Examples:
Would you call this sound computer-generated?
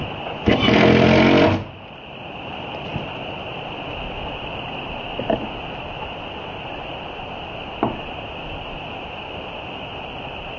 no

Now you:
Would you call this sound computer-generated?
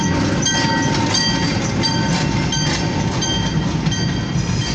no